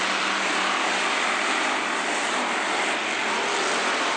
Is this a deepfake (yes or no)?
no